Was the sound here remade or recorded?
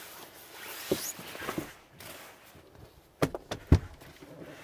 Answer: recorded